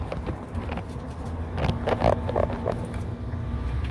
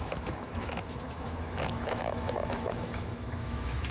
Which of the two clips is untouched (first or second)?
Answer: first